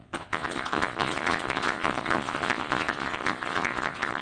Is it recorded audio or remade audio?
remade